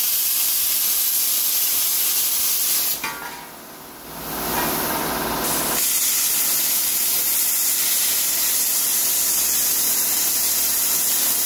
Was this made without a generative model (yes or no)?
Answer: yes